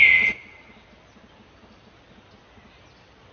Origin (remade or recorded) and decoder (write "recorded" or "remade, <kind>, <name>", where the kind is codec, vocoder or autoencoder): recorded